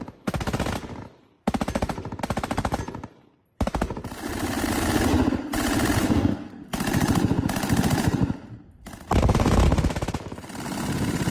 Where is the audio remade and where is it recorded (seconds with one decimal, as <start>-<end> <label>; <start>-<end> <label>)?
0.0-6.0 recorded; 6.0-6.6 remade; 6.6-11.3 recorded